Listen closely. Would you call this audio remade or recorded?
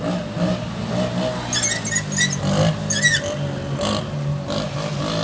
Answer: recorded